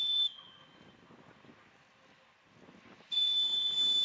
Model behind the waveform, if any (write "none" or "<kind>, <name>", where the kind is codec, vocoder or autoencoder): none